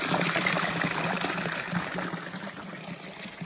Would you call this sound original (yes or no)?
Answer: yes